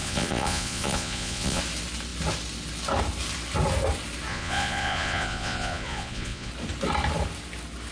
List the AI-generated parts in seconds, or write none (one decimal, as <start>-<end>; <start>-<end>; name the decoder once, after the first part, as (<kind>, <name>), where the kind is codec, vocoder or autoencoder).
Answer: 0.0-1.6 (vocoder, Vocos); 4.3-6.5